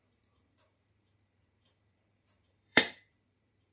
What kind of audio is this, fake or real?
fake